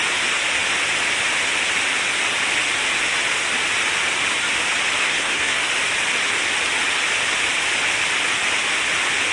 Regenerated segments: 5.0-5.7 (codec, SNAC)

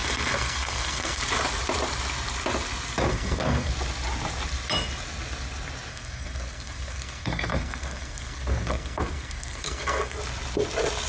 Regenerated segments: 0.0-1.2 (codec, SNAC); 3.1-3.7; 5.9-10.2

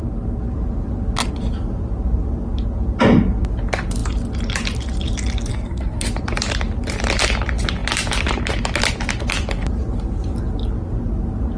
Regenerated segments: 5.5-6.1 (codec, SNAC)

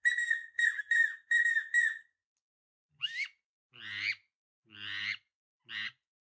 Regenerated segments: none

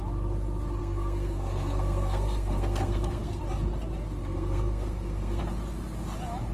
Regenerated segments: 0.8-3.4 (codec, SNAC); 4.2-5.4

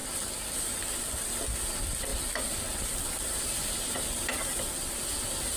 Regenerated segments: none